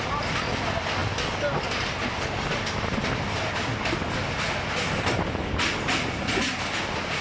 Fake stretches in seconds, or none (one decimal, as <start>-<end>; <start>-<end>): none